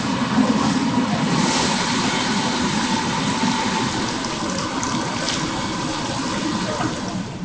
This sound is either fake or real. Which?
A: real